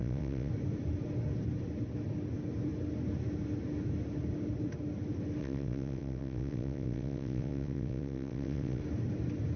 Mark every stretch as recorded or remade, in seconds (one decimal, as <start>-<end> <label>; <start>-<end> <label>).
0.0-0.5 remade; 0.5-5.4 recorded; 5.4-8.8 remade; 8.8-9.6 recorded